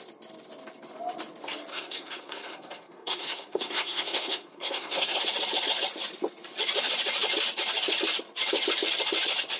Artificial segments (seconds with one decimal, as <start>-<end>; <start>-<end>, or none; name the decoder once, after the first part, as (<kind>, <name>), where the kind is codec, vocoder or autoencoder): 1.7-5.2 (codec, SNAC)

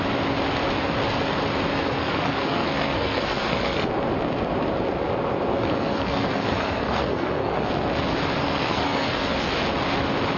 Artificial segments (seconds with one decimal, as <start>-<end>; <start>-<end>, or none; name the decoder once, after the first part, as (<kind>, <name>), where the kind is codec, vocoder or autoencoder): 2.0-3.9 (codec, SNAC); 5.5-7.7; 8.4-9.5

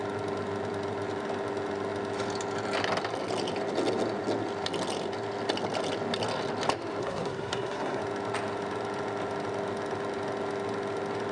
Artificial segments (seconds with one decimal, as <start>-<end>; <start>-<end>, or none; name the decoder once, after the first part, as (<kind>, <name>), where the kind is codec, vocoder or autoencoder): 7.0-8.0 (codec, SNAC)

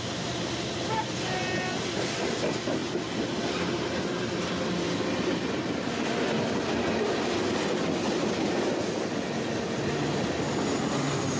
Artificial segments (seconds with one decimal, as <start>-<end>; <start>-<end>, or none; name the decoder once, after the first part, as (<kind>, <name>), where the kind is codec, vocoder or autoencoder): none

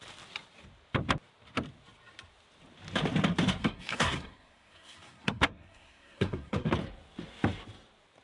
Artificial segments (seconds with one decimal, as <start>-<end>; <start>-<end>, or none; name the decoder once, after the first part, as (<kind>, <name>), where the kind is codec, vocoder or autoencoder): 3.6-6.7 (codec, SNAC)

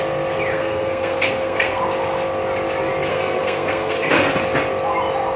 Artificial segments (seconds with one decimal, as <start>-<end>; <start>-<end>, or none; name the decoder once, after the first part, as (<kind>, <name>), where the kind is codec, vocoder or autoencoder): 0.5-1.8 (codec, SNAC); 3.1-4.1